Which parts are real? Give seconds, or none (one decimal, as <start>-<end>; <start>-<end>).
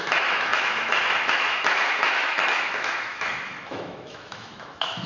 none